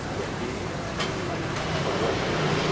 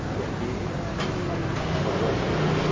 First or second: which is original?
second